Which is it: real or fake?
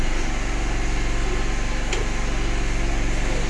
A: real